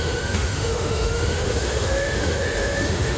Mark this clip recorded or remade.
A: remade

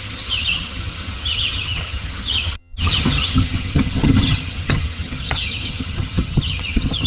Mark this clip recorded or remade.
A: remade